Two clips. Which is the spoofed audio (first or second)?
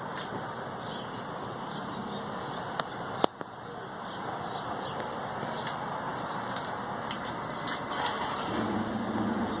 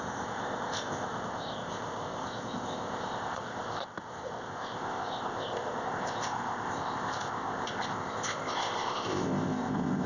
second